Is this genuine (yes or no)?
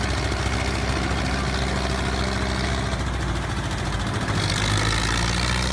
yes